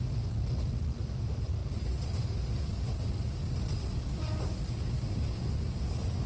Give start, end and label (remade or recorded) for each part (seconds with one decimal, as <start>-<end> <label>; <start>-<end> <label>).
0.0-6.3 recorded